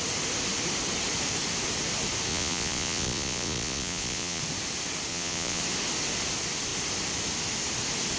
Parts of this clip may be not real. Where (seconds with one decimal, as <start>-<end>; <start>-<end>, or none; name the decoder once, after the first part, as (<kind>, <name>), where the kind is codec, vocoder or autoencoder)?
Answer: 2.3-4.4 (vocoder, Vocos); 5.1-5.6